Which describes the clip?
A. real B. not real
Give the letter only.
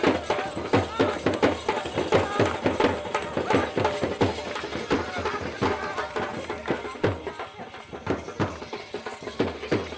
A